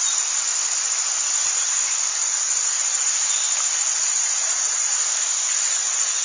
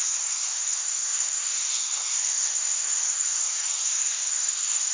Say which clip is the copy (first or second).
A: second